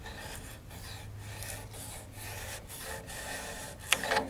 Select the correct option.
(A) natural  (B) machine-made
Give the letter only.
A